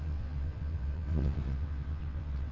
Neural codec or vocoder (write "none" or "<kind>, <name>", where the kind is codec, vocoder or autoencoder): vocoder, WaveNeXt